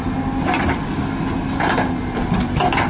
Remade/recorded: recorded